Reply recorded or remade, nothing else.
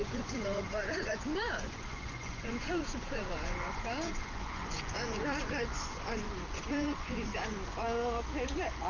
remade